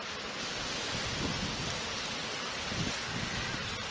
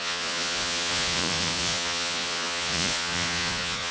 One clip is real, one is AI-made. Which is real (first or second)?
first